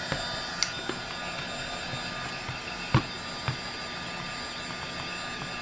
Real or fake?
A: real